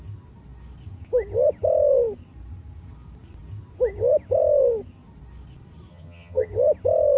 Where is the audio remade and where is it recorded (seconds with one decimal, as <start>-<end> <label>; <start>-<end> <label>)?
0.0-5.9 recorded; 5.9-6.5 remade; 6.5-7.2 recorded